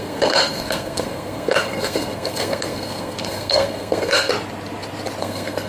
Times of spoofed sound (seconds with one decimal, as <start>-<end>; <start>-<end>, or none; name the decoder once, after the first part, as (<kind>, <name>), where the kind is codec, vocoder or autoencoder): 0.0-4.3 (codec, SNAC); 5.2-5.7